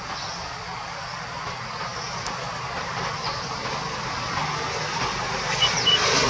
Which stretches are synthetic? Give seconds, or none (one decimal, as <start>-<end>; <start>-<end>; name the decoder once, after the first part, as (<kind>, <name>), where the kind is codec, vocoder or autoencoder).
none